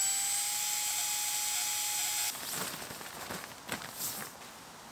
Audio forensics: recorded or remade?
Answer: recorded